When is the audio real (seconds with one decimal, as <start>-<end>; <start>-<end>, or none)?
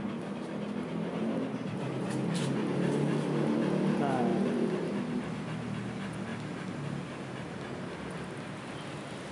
0.0-1.2; 2.4-4.3; 4.9-9.3